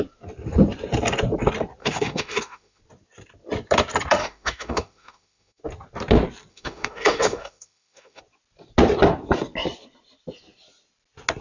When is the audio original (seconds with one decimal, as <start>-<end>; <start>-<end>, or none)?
0.0-1.8; 2.8-4.2; 5.6-6.5; 8.2-11.4